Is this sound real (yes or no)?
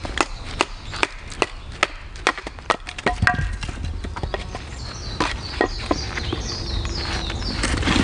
yes